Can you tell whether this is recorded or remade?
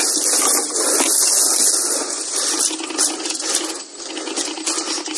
recorded